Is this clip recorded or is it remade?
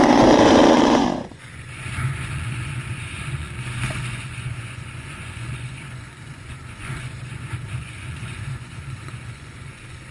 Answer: remade